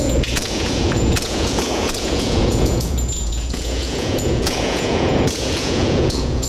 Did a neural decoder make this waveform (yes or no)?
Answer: yes